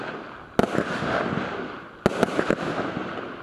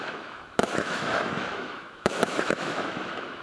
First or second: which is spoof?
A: second